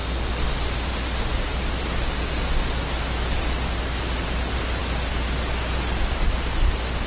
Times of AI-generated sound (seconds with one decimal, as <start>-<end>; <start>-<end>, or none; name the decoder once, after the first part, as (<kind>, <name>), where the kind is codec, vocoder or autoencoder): none